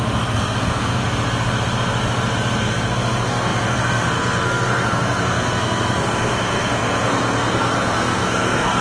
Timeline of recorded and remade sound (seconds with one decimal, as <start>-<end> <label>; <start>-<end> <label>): 0.0-1.0 remade; 1.0-2.6 recorded; 2.6-8.8 remade